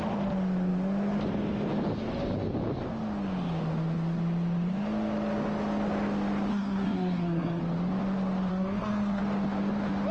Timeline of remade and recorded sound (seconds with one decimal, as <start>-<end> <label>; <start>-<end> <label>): 0.0-6.5 recorded; 6.5-7.6 remade; 7.6-8.5 recorded; 8.5-9.2 remade; 9.2-10.1 recorded